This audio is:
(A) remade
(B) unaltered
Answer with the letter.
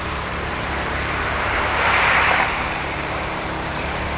A